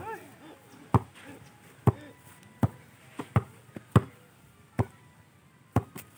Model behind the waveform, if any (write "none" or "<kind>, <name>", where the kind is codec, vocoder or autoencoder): none